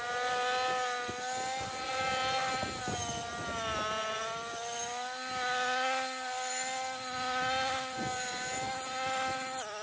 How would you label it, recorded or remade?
recorded